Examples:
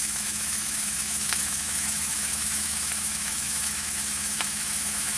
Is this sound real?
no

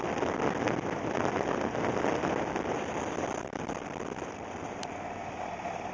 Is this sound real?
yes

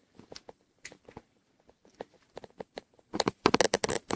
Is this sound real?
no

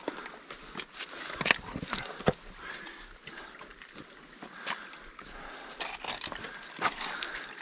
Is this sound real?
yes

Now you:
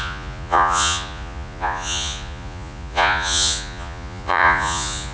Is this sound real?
no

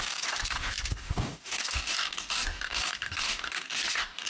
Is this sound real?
no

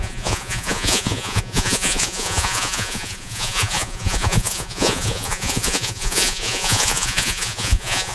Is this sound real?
no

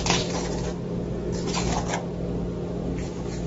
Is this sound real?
yes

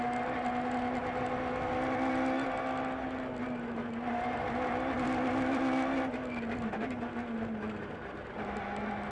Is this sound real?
yes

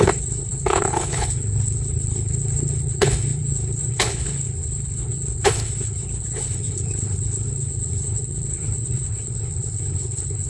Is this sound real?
no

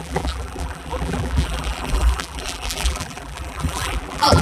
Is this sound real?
no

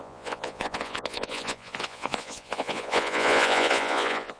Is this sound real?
no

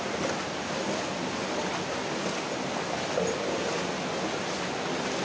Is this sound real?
yes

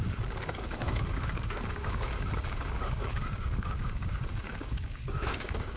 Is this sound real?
no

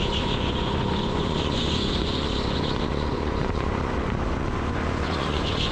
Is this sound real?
no